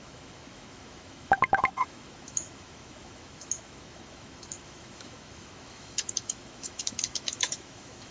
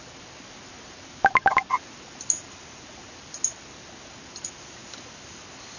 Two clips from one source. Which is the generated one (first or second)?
first